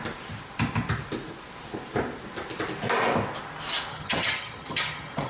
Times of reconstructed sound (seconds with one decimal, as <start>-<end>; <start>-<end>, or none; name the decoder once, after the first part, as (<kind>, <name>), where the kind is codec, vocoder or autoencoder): 3.9-5.3 (vocoder, HiFi-GAN)